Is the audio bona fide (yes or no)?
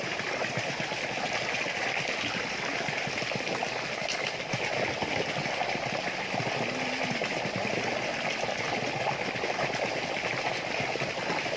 yes